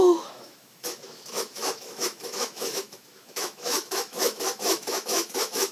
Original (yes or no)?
no